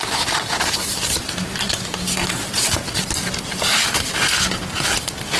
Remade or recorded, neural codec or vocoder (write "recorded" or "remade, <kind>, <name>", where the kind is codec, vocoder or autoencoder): recorded